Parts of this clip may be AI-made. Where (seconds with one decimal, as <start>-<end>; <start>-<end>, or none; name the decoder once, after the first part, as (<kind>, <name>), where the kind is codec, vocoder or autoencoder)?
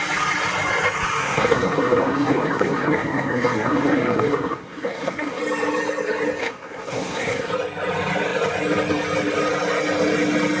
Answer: 1.2-5.4 (codec, SNAC); 6.4-7.5